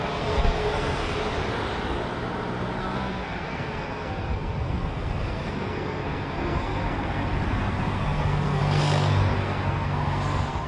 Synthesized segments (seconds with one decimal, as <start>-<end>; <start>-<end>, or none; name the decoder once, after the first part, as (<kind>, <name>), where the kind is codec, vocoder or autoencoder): 0.0-1.2 (codec, SNAC); 2.8-10.7